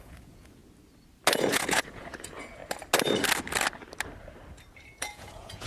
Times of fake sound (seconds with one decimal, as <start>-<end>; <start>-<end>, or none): 0.0-0.6; 1.5-2.6; 5.0-5.7